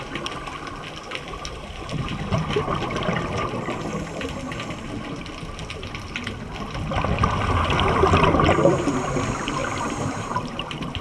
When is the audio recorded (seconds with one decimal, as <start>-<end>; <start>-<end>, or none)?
0.0-9.6